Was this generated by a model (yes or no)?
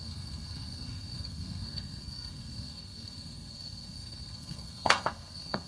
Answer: yes